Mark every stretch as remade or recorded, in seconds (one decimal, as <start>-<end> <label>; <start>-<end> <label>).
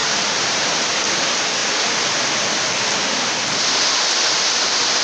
0.0-1.0 remade; 1.0-5.0 recorded